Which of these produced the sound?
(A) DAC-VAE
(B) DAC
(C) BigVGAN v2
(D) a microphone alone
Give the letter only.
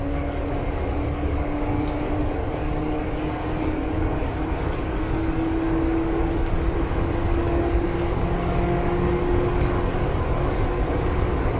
B